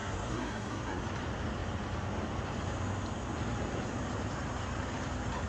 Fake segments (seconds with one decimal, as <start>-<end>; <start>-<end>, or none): 0.0-1.0